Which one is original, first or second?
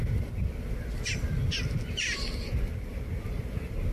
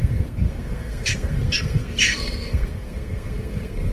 first